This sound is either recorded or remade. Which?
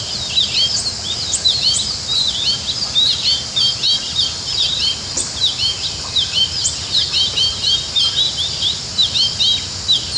recorded